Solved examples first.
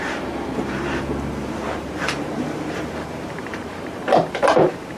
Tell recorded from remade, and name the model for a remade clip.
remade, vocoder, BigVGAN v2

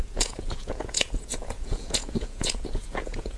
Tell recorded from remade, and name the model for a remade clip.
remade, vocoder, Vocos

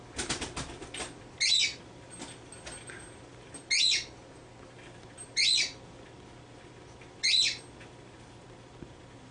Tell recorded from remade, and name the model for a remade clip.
recorded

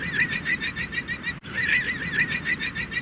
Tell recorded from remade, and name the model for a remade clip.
recorded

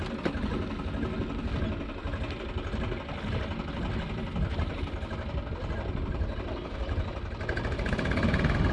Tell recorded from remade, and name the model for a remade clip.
recorded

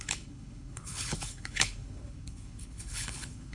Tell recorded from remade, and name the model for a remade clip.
remade, codec, HILCodec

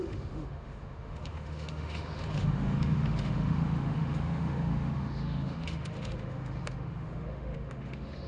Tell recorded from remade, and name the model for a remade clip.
remade, autoencoder, DAC-VAE